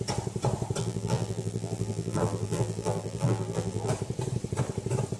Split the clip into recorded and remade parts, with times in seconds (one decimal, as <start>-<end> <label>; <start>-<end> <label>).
0.0-0.8 recorded; 0.8-3.9 remade; 3.9-5.2 recorded